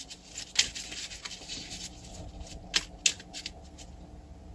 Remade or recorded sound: recorded